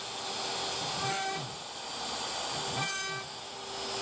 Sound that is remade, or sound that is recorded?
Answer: recorded